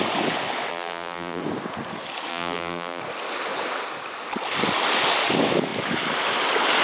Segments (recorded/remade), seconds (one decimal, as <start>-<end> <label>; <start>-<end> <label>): 0.0-0.7 recorded; 0.7-1.4 remade; 1.4-2.3 recorded; 2.3-3.0 remade; 3.0-6.8 recorded